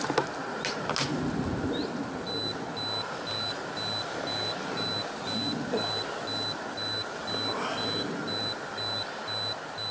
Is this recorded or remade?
recorded